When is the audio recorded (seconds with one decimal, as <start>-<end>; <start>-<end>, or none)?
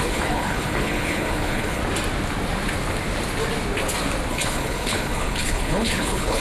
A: 1.8-4.3